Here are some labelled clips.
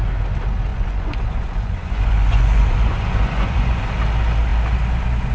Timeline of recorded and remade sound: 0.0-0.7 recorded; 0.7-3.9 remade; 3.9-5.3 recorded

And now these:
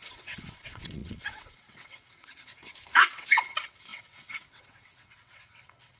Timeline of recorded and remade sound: 0.0-6.0 remade

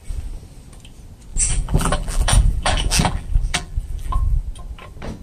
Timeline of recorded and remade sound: 0.0-1.3 recorded; 1.3-4.4 remade; 4.4-5.2 recorded

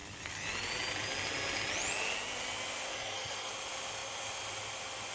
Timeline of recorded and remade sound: 0.0-2.9 recorded; 2.9-3.5 remade; 3.5-5.1 recorded

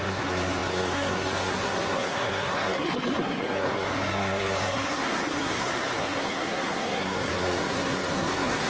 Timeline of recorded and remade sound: 0.0-8.7 remade